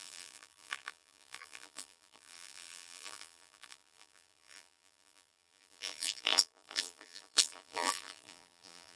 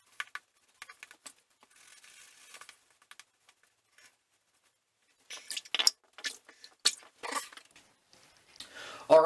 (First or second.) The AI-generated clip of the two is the first